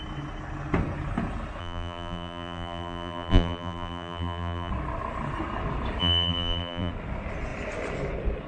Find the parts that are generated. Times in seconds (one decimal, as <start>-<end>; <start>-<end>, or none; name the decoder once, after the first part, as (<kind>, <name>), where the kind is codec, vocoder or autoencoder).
1.6-4.7 (vocoder, BigVGAN v2); 6.0-6.9